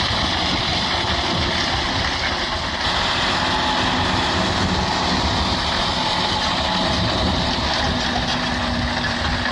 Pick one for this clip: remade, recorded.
recorded